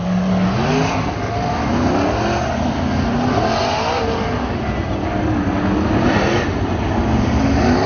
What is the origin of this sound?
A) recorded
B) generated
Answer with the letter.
A